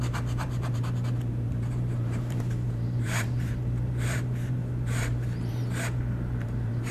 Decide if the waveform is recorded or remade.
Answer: remade